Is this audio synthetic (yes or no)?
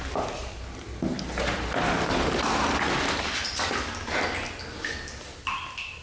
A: no